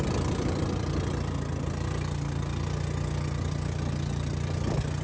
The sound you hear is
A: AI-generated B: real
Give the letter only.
B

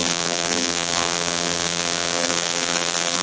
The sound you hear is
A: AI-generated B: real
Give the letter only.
A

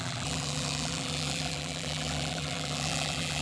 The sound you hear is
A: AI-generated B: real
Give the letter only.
A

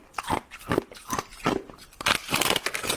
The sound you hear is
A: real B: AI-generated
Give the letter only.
A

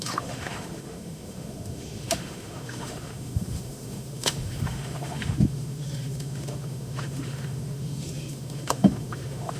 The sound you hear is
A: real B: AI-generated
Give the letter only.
B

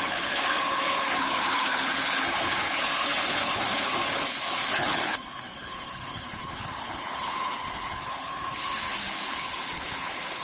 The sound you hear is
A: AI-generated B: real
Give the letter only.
A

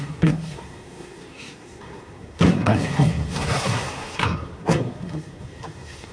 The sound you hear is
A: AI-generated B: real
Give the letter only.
A